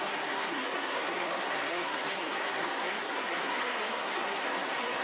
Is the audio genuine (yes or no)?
no